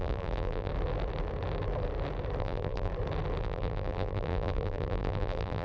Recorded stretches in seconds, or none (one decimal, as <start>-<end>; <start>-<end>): 0.7-2.4; 2.9-3.4